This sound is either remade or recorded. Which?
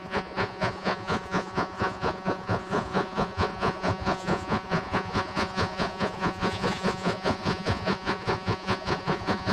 remade